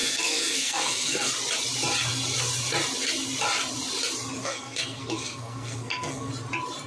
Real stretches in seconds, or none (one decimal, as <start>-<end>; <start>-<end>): 1.3-4.4; 6.3-6.9